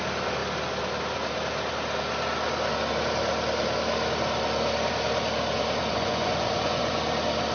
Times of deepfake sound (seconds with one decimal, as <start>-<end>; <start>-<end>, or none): 5.9-7.0